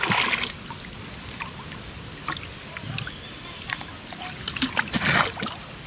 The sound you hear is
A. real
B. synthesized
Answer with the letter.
A